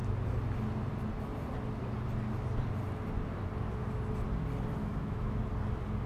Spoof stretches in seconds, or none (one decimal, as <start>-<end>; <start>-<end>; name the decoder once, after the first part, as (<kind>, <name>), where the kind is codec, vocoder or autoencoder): 4.8-5.4 (autoencoder, DAC-VAE)